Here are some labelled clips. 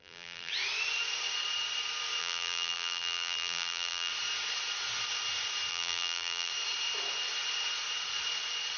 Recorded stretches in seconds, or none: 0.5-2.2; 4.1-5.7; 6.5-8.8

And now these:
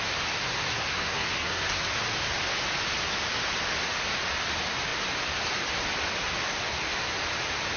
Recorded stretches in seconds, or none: 0.0-0.7; 1.9-7.8

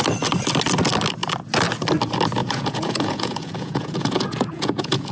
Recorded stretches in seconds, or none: 0.0-2.4

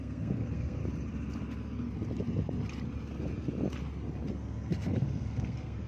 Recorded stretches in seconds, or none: 0.8-4.3